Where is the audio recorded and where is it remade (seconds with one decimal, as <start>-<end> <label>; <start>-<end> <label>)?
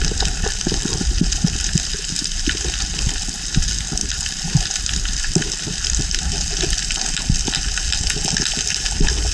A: 0.0-4.0 recorded; 4.0-6.3 remade; 6.3-9.3 recorded